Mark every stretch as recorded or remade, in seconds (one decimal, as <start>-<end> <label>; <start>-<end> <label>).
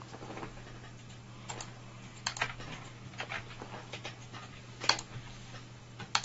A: 0.0-6.2 recorded